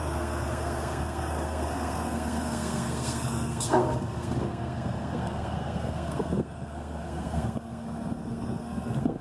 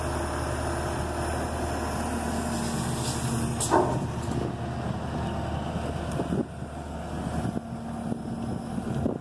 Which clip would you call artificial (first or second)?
first